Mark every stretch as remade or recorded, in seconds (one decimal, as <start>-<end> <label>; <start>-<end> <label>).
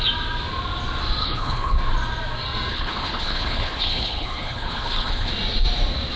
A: 0.0-1.2 recorded; 1.2-1.8 remade; 1.8-2.7 recorded; 2.7-5.3 remade; 5.3-6.2 recorded